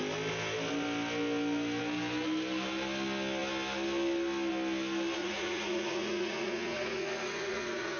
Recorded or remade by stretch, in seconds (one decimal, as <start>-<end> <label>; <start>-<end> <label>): 0.0-5.2 recorded; 5.2-8.0 remade